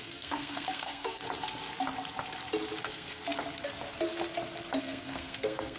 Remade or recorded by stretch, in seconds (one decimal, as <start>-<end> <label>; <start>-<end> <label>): 0.0-1.2 remade; 1.2-2.8 recorded; 2.8-3.2 remade; 3.2-4.8 recorded; 4.8-5.8 remade